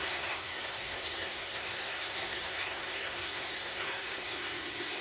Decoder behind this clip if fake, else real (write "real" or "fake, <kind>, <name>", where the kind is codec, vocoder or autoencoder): fake, codec, SNAC